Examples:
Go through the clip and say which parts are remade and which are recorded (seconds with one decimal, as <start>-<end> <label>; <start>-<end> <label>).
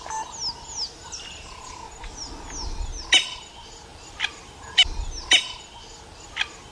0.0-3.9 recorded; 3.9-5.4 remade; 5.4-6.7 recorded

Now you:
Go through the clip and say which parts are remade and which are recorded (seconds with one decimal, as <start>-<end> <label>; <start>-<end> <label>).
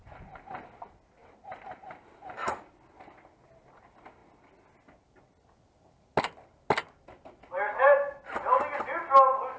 0.0-9.6 recorded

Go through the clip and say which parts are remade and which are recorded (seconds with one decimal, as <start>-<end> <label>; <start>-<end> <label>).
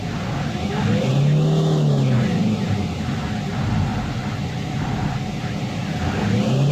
0.0-2.4 recorded; 2.4-3.1 remade; 3.1-3.9 recorded; 3.9-4.7 remade; 4.7-6.7 recorded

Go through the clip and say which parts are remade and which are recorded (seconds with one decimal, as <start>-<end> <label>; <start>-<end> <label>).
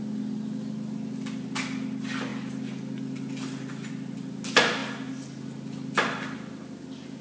0.0-7.2 recorded